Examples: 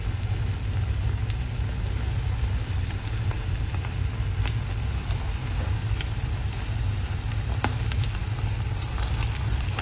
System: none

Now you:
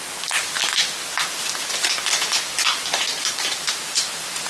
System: none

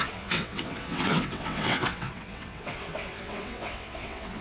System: vocoder, WaveNeXt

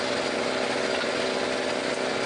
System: none